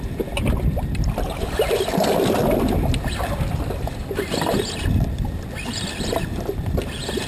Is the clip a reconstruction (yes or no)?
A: no